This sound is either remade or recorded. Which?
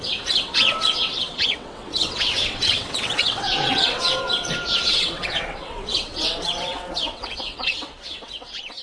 remade